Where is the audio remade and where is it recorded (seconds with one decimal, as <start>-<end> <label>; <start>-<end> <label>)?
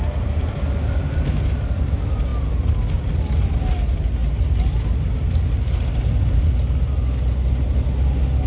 0.0-8.5 recorded